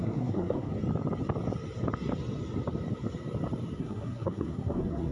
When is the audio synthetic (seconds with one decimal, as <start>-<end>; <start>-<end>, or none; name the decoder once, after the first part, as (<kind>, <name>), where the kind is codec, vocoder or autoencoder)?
0.0-0.7 (codec, SNAC); 3.8-5.1